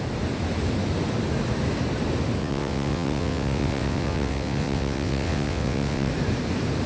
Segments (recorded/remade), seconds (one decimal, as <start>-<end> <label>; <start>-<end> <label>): 0.0-2.4 recorded; 2.4-6.1 remade; 6.1-6.9 recorded